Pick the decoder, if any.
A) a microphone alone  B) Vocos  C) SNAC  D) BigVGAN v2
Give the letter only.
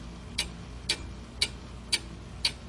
A